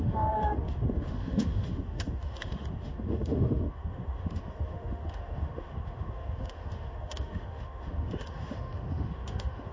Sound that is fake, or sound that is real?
fake